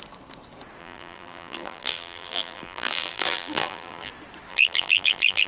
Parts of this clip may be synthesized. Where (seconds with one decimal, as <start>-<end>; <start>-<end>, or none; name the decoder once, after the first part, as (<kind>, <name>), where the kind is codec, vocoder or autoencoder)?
0.8-4.1 (vocoder, BigVGAN v2); 4.5-5.5